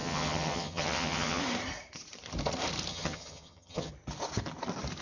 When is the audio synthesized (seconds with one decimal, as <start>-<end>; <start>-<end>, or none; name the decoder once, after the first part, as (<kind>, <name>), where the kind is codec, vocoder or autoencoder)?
0.0-1.4 (vocoder, HiFi-GAN); 2.9-3.9